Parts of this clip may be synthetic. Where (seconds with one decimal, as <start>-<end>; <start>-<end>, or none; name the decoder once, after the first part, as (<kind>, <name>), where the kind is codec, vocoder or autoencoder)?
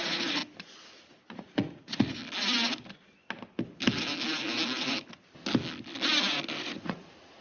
0.0-0.4 (vocoder, Vocos); 1.1-2.2; 6.6-7.4